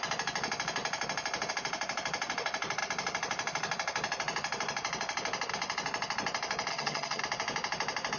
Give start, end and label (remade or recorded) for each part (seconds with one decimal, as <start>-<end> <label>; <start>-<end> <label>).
0.0-6.7 recorded; 6.7-7.2 remade; 7.2-8.2 recorded